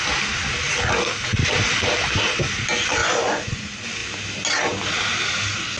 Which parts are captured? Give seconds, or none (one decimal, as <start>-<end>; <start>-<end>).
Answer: 0.0-3.0; 3.6-5.8